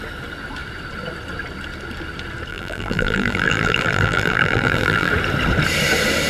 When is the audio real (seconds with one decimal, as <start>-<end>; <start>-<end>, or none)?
0.0-2.5; 5.1-6.3